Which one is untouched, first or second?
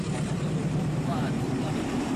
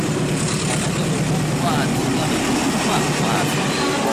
second